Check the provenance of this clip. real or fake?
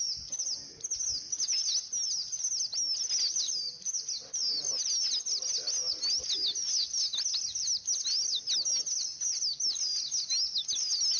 real